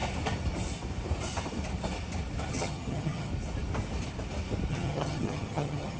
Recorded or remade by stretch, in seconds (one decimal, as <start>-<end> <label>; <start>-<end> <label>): 0.0-2.5 recorded; 2.5-3.3 remade; 3.3-4.7 recorded; 4.7-6.0 remade